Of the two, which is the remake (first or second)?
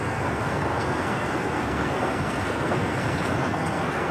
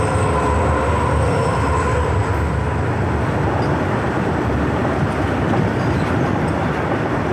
first